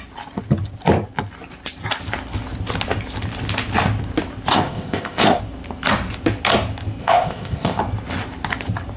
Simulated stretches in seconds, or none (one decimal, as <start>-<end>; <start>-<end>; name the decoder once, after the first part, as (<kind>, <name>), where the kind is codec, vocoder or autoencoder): 4.5-5.4 (codec, ZipCodec); 7.0-7.8